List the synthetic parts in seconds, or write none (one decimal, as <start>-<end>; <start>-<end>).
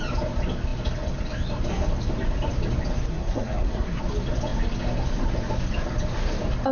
3.1-4.0